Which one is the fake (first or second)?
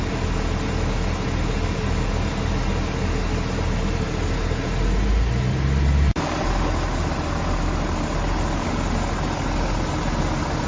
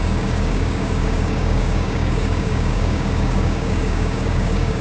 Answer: second